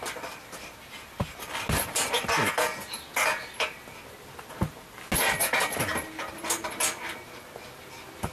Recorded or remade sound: recorded